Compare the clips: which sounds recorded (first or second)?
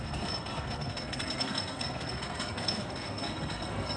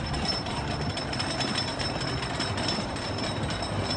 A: second